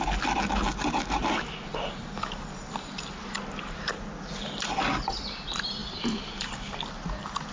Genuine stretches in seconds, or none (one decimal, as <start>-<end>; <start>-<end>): 0.0-7.5

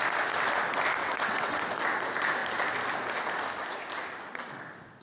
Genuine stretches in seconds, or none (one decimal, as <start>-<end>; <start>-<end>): 0.0-1.0; 1.6-5.0

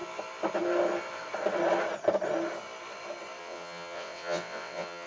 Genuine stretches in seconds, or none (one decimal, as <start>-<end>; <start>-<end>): 0.0-3.4